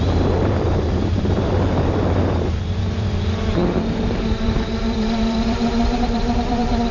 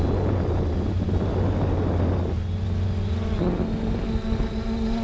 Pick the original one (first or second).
second